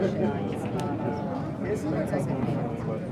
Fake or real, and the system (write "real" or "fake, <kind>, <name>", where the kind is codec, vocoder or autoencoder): real